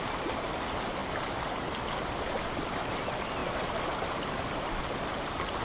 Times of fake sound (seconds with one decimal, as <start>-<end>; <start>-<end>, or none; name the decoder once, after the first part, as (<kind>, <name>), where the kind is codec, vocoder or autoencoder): 3.4-4.8 (vocoder, BigVGAN v2)